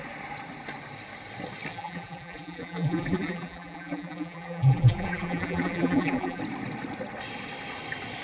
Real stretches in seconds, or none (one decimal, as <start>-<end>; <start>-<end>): 0.0-1.7; 6.4-8.2